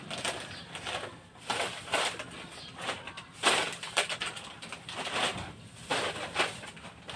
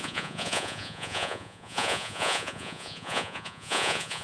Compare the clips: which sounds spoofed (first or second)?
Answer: second